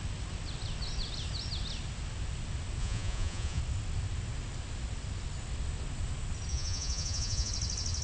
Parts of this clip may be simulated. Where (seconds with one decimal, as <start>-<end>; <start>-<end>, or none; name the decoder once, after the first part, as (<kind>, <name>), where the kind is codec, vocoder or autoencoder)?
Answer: 2.8-3.6 (vocoder, Vocos); 6.5-7.5